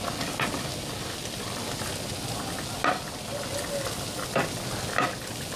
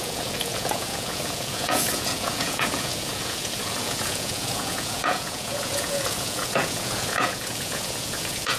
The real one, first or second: first